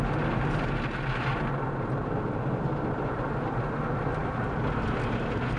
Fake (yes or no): no